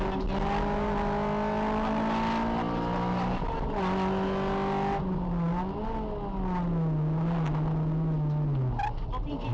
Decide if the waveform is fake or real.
real